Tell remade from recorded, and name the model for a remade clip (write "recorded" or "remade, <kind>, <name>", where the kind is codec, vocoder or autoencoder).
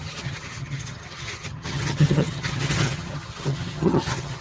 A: remade, vocoder, HiFi-GAN